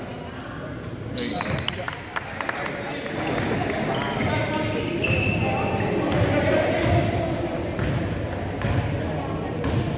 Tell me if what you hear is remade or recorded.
recorded